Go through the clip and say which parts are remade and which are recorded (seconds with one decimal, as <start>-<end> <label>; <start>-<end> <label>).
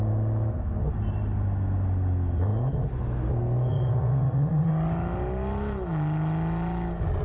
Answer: 0.0-3.7 recorded; 3.7-4.7 remade; 4.7-7.2 recorded